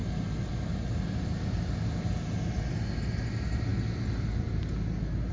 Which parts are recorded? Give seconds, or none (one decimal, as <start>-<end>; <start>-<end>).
0.0-5.3